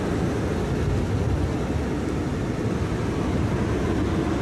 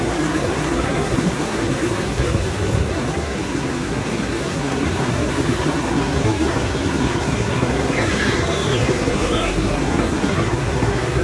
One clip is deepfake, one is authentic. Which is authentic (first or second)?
first